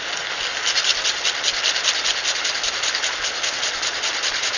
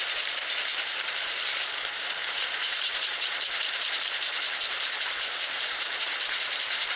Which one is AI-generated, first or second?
second